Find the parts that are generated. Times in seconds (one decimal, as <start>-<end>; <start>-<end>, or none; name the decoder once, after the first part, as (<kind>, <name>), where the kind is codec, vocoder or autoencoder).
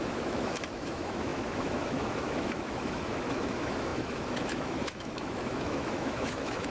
0.0-6.7 (autoencoder, DAC-VAE)